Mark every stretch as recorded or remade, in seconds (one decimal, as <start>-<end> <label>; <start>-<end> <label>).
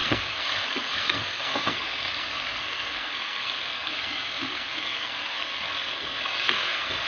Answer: 0.0-7.1 remade